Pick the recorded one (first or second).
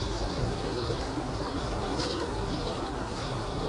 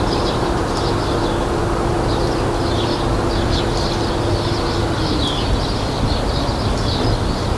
second